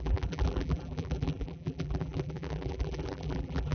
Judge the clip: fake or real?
fake